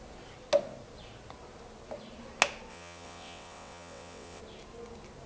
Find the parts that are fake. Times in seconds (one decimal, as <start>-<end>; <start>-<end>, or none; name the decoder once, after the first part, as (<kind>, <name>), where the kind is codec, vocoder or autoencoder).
2.7-4.4 (vocoder, WaveNeXt)

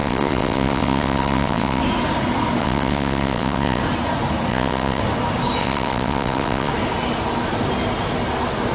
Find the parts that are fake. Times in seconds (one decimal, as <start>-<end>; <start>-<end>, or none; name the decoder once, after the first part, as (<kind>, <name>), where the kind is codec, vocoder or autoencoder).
0.0-1.8 (vocoder, WaveNeXt); 2.6-3.8; 4.5-5.0; 5.6-6.7

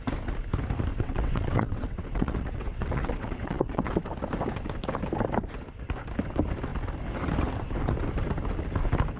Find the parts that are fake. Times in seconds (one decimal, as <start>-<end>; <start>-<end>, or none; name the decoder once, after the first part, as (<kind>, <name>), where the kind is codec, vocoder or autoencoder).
0.9-3.9 (vocoder, WaveNeXt)